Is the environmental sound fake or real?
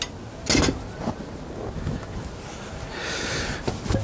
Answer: real